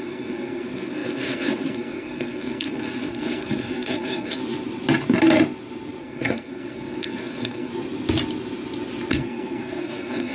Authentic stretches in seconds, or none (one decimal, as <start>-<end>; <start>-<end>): 4.4-6.0; 7.7-9.1

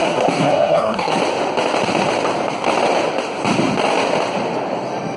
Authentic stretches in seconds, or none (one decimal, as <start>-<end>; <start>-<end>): 1.2-5.2

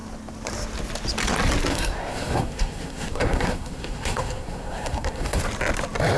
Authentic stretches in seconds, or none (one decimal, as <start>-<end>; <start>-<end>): 0.0-1.7; 5.4-6.2

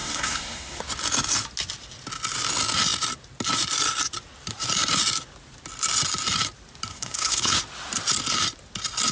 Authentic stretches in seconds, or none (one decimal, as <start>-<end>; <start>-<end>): 0.8-6.9; 7.6-9.1

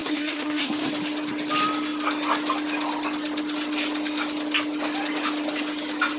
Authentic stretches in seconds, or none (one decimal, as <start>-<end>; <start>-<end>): 0.9-6.2

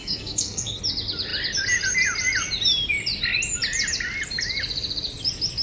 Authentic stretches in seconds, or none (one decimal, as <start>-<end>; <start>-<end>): 0.8-5.6

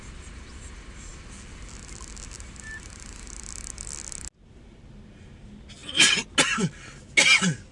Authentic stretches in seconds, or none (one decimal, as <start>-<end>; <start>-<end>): 0.0-7.7

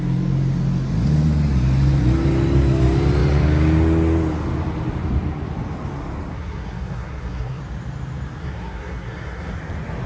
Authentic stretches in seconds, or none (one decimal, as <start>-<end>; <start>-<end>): 0.0-6.3; 7.6-8.4; 9.5-10.1